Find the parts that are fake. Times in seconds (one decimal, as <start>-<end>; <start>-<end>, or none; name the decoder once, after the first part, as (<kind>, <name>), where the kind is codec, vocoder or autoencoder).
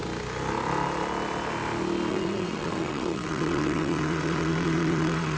2.1-5.4 (vocoder, WaveNeXt)